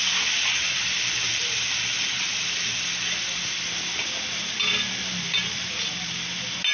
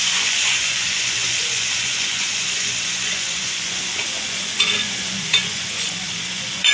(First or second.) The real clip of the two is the first